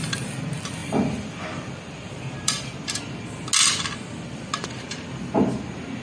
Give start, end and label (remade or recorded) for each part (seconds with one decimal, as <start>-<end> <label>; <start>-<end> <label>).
0.0-0.8 recorded; 0.8-3.0 remade; 3.0-6.0 recorded